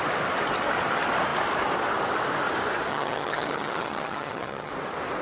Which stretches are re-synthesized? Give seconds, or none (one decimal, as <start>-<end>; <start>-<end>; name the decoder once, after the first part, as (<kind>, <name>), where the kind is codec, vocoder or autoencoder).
2.9-4.7 (vocoder, HiFi-GAN)